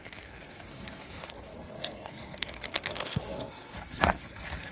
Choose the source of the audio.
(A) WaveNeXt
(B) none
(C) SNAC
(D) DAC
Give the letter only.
C